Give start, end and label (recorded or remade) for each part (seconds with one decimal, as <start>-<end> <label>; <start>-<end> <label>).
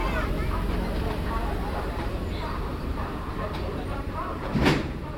0.0-2.4 recorded; 2.4-5.2 remade